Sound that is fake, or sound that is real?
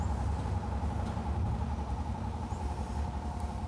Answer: real